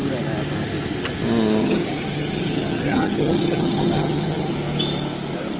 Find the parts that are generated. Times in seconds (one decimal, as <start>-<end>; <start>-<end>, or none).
1.6-4.5